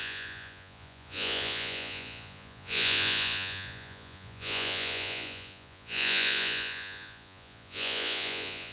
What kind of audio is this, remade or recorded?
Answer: remade